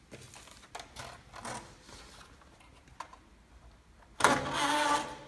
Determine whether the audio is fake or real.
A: real